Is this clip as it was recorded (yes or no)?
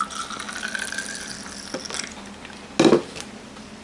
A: yes